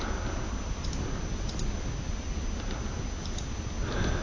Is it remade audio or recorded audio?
recorded